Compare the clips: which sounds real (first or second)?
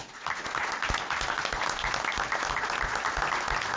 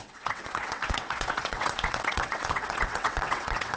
first